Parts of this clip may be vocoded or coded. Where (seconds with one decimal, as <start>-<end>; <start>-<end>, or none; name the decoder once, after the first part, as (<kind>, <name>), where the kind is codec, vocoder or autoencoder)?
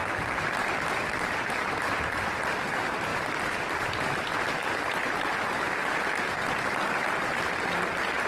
0.0-2.5 (vocoder, BigVGAN v2); 3.1-5.2